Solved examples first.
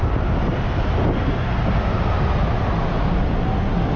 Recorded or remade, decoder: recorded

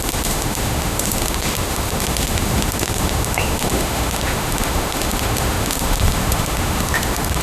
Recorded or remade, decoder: remade, autoencoder, DAC-VAE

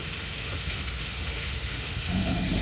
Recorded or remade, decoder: remade, autoencoder, DAC-VAE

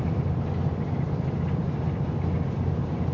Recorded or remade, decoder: recorded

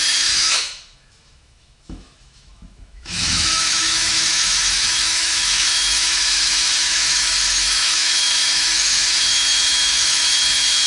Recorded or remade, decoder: remade, autoencoder, DAC-VAE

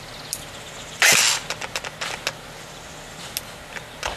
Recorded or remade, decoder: recorded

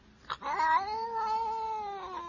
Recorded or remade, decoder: recorded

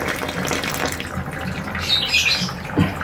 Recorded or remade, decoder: recorded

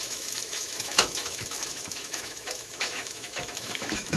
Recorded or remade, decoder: remade, autoencoder, DAC-VAE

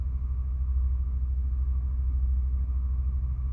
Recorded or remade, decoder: recorded